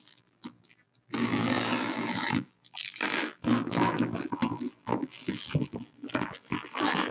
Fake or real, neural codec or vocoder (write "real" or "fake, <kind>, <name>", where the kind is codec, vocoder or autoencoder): fake, vocoder, BigVGAN v2